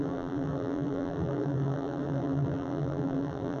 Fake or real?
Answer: fake